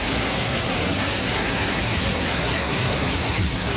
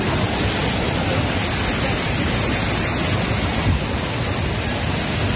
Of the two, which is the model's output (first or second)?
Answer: first